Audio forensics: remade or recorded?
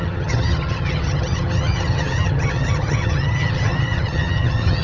remade